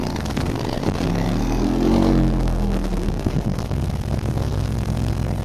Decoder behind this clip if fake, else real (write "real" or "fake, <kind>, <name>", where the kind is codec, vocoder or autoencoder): fake, codec, SNAC